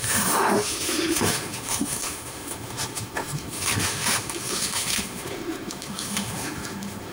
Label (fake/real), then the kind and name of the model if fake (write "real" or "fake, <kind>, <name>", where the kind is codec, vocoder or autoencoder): fake, autoencoder, DAC-VAE